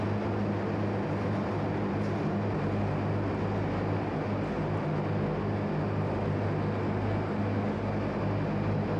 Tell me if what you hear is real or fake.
real